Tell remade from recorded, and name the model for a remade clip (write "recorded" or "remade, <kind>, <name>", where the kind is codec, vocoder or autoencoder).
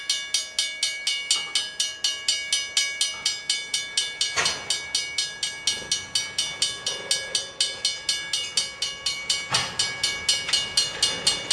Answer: recorded